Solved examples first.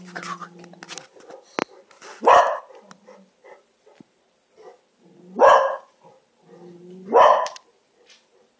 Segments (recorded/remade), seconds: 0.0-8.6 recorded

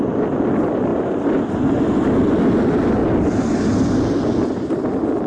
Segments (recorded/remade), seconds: 0.0-5.3 recorded

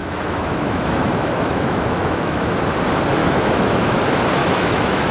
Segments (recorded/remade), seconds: 0.0-2.5 remade; 2.5-3.2 recorded; 3.2-4.0 remade; 4.0-4.4 recorded; 4.4-5.1 remade

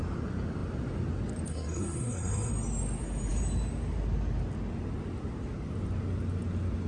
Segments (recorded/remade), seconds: 0.0-1.5 recorded; 1.5-2.5 remade; 2.5-6.9 recorded

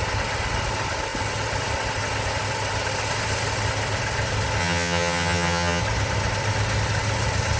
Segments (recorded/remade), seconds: 0.0-4.6 recorded; 4.6-5.8 remade; 5.8-7.6 recorded

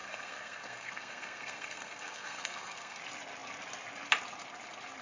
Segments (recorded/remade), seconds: 0.0-3.0 remade; 3.0-5.0 recorded

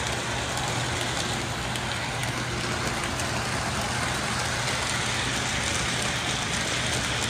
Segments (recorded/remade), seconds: 0.0-7.3 recorded